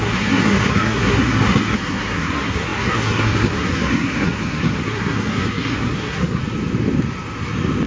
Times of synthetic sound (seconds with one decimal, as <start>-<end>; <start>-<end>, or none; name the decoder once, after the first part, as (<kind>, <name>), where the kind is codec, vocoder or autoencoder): 0.0-6.4 (codec, SNAC)